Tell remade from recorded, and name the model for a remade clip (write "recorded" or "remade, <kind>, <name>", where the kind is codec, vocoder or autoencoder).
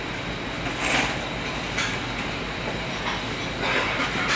recorded